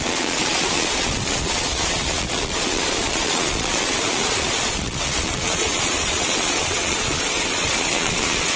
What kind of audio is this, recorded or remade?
remade